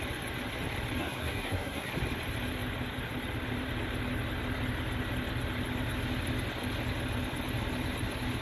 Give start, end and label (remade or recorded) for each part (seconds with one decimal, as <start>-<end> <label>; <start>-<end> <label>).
0.0-1.0 recorded; 1.0-1.9 remade; 1.9-8.4 recorded